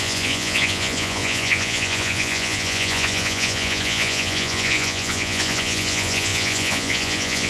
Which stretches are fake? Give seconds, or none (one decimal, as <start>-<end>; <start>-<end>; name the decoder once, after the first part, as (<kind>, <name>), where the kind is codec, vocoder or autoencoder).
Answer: 0.0-7.5 (vocoder, Vocos)